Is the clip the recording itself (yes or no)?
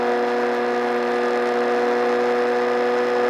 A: yes